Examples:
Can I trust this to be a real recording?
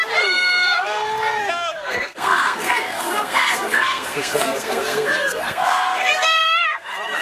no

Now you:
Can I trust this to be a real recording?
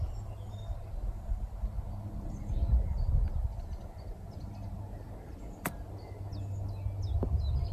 yes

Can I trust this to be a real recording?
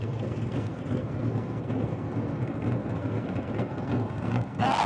no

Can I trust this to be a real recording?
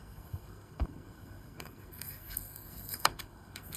no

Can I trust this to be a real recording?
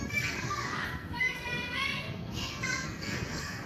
no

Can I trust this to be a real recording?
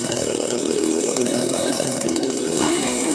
no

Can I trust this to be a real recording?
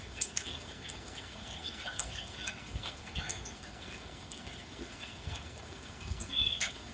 no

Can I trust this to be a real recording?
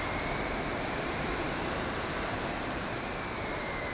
yes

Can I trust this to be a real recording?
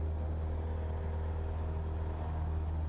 yes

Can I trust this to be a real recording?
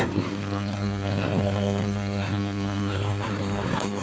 no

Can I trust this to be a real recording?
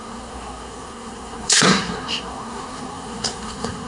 no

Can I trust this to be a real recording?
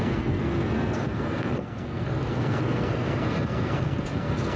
no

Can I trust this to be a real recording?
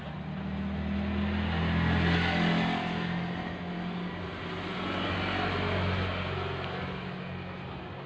yes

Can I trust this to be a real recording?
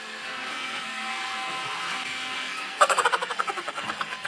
no